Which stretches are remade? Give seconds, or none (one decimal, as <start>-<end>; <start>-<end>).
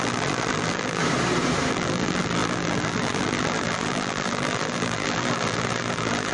0.0-1.0; 1.7-6.3